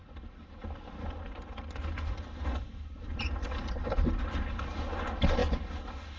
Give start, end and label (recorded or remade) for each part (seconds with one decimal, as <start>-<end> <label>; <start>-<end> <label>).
0.0-6.2 recorded